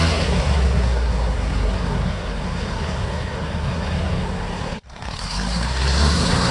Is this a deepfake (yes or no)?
yes